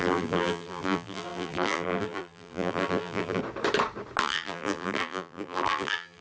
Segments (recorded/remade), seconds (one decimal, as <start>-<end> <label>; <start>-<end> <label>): 0.0-3.4 remade; 3.4-4.2 recorded; 4.2-6.2 remade